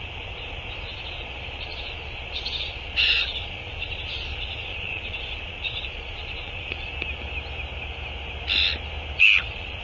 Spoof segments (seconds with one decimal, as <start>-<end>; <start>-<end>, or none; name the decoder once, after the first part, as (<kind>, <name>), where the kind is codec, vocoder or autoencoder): 0.0-6.9 (vocoder, Vocos); 9.4-9.8